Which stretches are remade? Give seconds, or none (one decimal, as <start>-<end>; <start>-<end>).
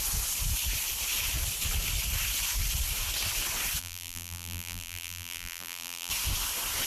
3.8-6.1